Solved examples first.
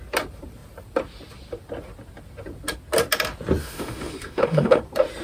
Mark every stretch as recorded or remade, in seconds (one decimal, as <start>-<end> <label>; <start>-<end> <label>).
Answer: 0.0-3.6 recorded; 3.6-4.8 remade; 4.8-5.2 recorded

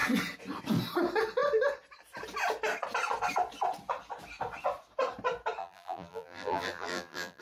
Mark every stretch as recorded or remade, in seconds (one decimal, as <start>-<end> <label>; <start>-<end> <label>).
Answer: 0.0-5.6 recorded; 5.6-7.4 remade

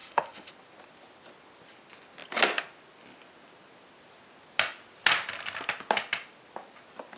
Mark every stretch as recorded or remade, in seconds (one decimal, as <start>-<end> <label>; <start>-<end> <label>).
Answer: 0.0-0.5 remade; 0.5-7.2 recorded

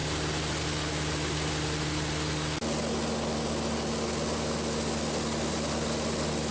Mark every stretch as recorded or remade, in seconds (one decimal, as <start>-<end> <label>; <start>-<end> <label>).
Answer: 0.0-6.5 recorded